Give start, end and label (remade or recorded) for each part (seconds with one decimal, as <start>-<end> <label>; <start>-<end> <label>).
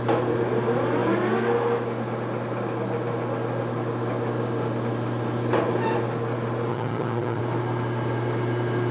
0.0-6.7 recorded; 6.7-7.4 remade; 7.4-8.9 recorded